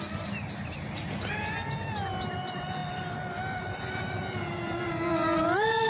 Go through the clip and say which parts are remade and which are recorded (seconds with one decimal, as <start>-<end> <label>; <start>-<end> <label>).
0.0-5.9 recorded